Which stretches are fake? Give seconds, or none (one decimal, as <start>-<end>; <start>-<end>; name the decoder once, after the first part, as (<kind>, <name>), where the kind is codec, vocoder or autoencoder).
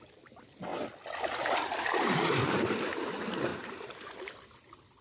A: none